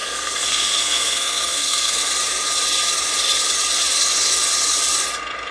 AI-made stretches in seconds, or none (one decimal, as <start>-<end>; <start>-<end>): 0.0-2.0